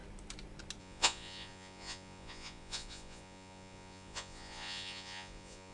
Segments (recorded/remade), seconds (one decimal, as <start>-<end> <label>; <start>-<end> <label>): 0.0-0.8 recorded; 0.8-5.7 remade